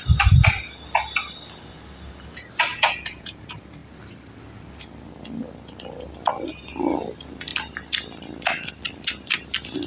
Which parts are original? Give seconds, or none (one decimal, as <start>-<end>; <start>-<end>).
0.0-2.7; 3.4-9.9